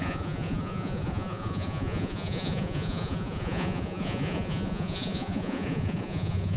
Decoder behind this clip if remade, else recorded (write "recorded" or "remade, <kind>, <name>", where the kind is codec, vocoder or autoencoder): remade, vocoder, Vocos